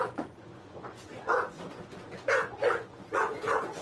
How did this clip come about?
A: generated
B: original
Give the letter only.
A